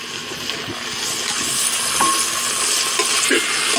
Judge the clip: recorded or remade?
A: recorded